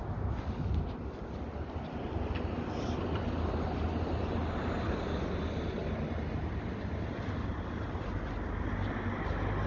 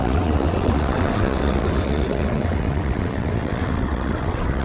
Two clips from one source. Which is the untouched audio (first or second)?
first